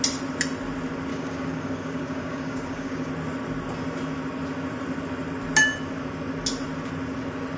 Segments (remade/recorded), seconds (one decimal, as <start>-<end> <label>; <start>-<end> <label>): 0.0-1.1 recorded; 1.1-3.1 remade; 3.1-7.6 recorded